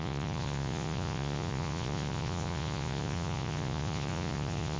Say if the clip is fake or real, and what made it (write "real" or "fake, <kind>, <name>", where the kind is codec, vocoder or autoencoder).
fake, vocoder, Vocos